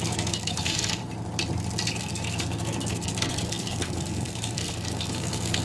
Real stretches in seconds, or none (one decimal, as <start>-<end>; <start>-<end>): 1.0-1.9